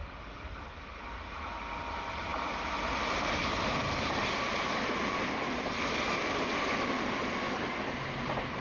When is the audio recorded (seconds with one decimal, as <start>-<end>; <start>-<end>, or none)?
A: 0.0-8.6

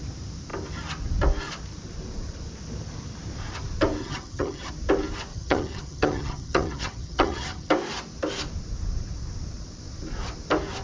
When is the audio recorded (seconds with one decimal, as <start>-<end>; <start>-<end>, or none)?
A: 0.0-4.0; 4.7-5.3; 7.7-10.8

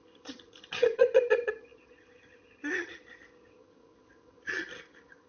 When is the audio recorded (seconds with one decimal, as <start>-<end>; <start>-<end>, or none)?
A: none

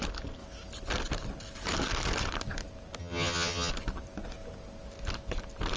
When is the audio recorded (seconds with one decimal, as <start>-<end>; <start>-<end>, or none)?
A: 0.0-3.0; 3.7-5.8